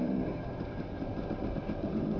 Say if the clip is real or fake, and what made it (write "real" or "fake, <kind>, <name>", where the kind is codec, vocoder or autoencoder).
fake, vocoder, BigVGAN v2